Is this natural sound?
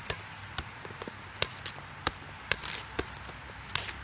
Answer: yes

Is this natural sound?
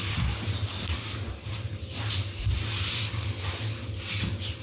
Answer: yes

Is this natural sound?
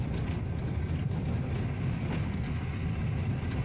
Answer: yes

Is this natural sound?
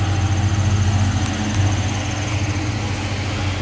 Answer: yes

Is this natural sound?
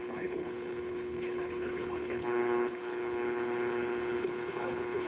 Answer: no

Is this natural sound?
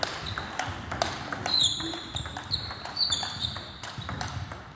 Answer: yes